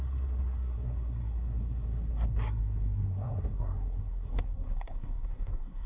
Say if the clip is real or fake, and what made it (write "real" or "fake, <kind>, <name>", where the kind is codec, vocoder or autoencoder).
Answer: fake, codec, SNAC